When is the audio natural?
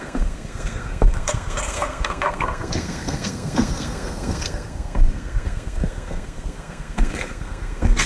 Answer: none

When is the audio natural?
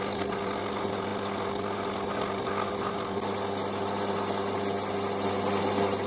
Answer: 0.0-6.1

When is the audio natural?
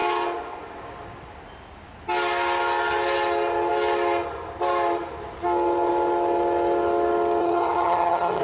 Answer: 0.0-7.4